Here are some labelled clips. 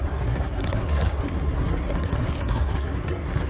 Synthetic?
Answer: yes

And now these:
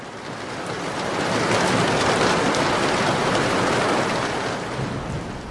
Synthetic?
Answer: no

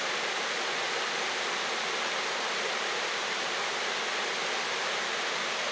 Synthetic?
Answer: no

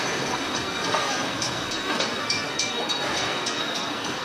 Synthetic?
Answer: yes